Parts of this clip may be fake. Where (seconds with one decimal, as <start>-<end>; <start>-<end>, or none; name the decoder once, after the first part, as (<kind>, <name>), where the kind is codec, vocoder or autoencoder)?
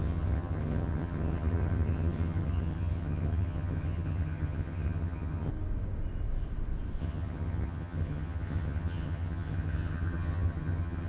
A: 0.0-5.5 (vocoder, HiFi-GAN); 7.0-11.1